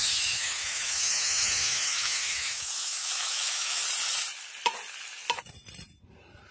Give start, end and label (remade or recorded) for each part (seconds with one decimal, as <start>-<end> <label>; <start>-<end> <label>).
0.0-3.8 remade; 3.8-6.5 recorded